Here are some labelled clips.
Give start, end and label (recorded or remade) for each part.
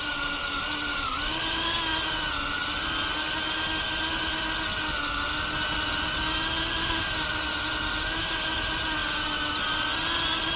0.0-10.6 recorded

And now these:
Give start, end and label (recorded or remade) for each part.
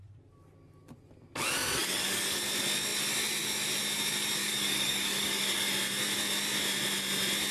0.0-1.8 recorded; 1.8-2.4 remade; 2.4-4.4 recorded; 4.4-5.7 remade; 5.7-7.5 recorded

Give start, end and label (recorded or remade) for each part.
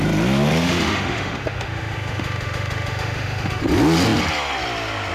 0.0-0.6 recorded; 0.6-3.6 remade; 3.6-5.1 recorded